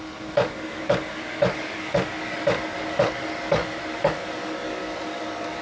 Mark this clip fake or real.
fake